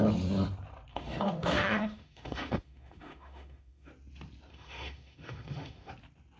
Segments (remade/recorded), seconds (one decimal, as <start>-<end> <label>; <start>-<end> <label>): 0.0-0.9 recorded; 0.9-3.9 remade; 3.9-4.5 recorded; 4.5-5.9 remade; 5.9-6.4 recorded